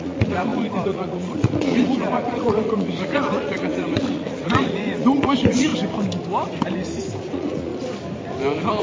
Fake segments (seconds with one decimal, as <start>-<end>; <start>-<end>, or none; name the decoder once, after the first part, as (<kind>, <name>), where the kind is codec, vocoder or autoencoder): 0.0-5.7 (vocoder, Vocos); 7.3-7.7